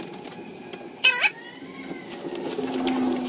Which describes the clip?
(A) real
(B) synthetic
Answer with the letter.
A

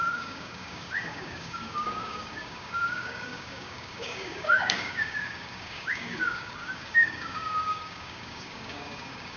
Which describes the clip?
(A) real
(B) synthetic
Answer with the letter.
B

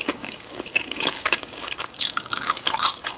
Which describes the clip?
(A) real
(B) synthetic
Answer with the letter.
B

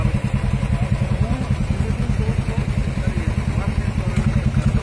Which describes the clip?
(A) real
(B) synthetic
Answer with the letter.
A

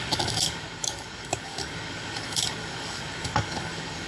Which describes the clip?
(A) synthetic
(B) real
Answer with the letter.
A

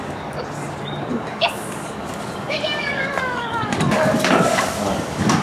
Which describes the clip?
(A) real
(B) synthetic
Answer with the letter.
B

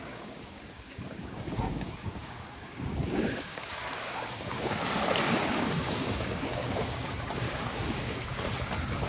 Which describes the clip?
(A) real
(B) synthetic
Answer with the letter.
B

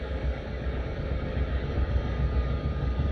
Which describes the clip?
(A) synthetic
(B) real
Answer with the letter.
A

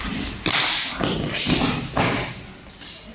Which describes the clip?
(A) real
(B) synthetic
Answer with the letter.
A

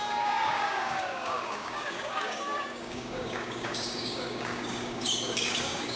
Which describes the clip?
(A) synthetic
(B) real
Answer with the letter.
A